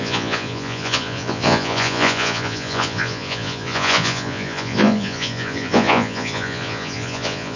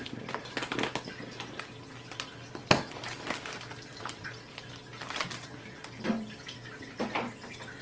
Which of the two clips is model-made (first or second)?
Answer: first